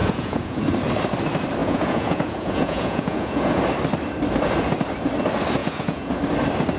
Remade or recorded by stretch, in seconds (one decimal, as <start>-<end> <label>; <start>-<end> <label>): 0.0-0.6 remade; 0.6-1.6 recorded; 1.6-3.6 remade; 3.6-5.6 recorded; 5.6-6.1 remade; 6.1-6.8 recorded